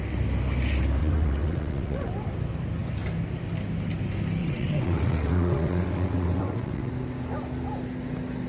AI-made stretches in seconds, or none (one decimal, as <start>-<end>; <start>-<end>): 1.0-2.1; 4.4-6.9